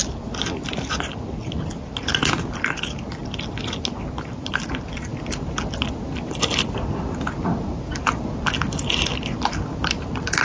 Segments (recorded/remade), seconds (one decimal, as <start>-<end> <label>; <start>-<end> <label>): 0.0-10.4 recorded